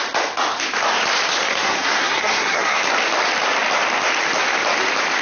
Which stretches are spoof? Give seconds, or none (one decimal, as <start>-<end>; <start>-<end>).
1.5-2.8